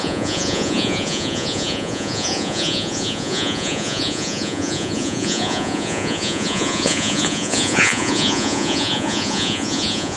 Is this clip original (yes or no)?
no